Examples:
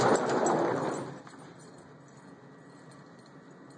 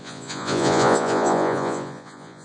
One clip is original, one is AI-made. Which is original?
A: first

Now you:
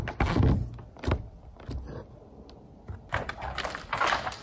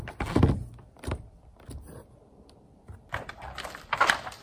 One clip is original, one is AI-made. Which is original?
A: first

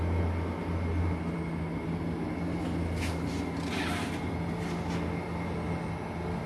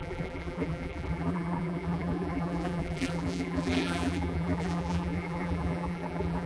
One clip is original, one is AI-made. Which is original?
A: first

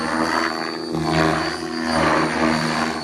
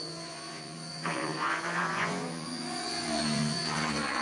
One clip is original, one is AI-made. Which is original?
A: first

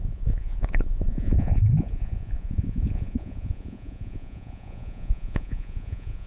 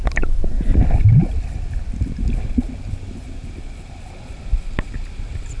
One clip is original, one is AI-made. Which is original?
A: second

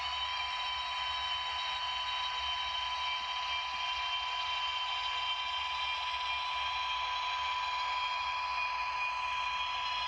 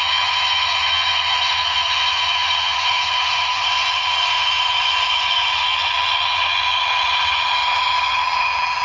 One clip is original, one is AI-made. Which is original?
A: first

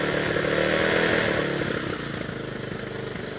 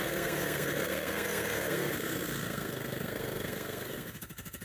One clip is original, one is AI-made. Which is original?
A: first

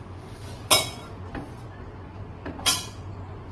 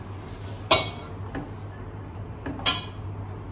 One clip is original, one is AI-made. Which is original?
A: second